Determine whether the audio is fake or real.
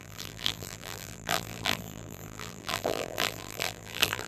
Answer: fake